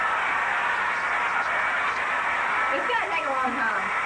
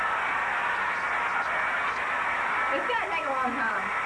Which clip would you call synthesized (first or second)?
first